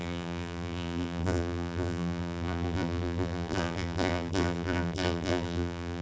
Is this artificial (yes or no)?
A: yes